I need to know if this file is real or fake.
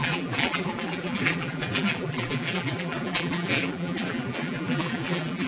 fake